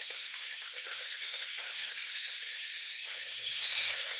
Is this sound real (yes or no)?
no